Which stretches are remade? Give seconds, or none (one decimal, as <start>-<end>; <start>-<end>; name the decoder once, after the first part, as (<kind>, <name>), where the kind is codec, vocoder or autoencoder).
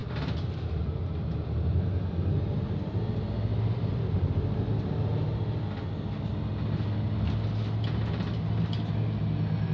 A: 3.5-4.4 (vocoder, BigVGAN v2)